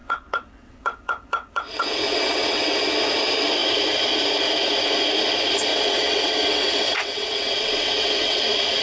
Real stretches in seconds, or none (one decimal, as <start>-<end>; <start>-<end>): 2.7-5.7; 8.4-8.8